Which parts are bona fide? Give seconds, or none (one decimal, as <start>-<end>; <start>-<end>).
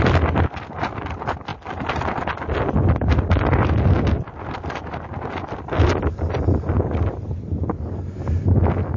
0.0-9.0